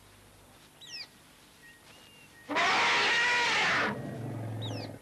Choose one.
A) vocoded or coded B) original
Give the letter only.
B